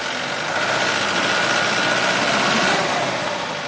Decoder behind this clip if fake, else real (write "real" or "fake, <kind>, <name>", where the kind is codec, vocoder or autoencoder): real